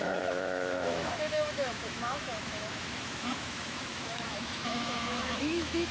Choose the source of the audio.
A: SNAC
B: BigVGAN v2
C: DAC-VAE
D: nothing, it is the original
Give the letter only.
C